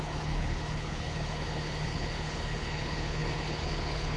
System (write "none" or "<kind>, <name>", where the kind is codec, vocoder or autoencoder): codec, HILCodec